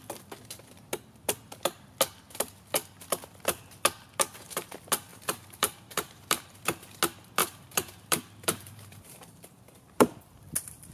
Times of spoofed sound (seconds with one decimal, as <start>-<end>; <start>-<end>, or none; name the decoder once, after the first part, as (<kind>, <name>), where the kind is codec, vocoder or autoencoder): 5.1-6.5 (vocoder, BigVGAN v2); 7.4-10.2